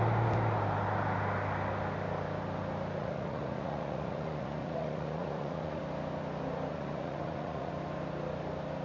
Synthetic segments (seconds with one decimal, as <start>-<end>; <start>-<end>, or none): 3.0-5.8; 6.7-7.7